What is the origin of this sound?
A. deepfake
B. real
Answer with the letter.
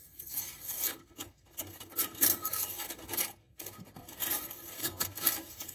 A